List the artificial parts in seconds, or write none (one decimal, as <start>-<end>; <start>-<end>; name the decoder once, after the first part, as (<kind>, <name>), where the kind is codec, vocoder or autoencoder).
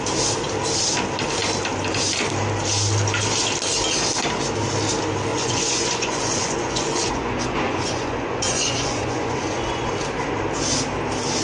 5.3-9.9 (vocoder, Vocos)